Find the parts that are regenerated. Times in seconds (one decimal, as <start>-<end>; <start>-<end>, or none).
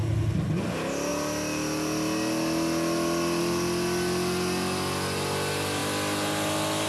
none